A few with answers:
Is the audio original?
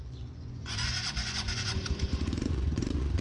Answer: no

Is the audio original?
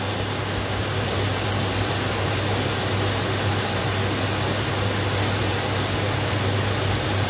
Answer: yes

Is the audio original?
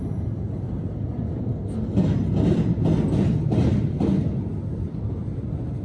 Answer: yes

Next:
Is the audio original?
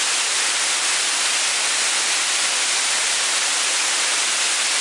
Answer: yes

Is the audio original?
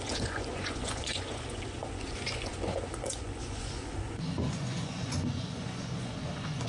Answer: no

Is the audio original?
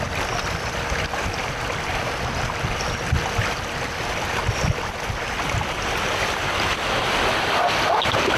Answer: yes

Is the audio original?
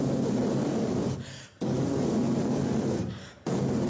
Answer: yes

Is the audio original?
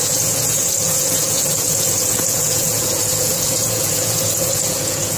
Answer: no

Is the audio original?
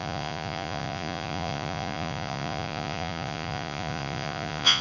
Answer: no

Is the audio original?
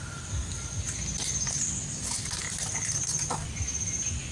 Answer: yes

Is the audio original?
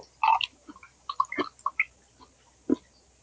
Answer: yes